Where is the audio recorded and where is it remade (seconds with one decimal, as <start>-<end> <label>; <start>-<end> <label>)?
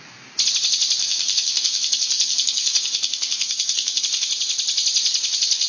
0.0-1.0 recorded; 1.0-4.0 remade; 4.0-5.7 recorded